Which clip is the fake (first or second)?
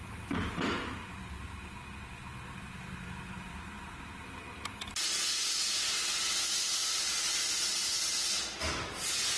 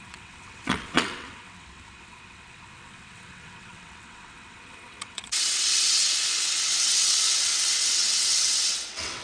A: second